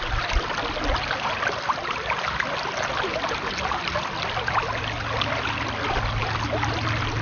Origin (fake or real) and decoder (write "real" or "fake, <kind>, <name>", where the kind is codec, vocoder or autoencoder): real